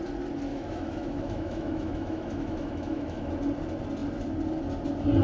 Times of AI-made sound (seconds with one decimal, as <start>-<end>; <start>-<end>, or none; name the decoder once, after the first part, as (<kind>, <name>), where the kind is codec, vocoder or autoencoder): 0.5-3.3 (autoencoder, DAC-VAE)